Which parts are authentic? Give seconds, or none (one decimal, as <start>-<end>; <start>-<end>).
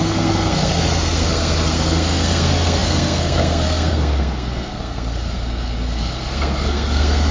none